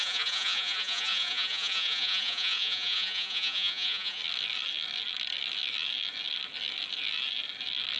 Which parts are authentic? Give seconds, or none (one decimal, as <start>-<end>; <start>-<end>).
4.2-8.0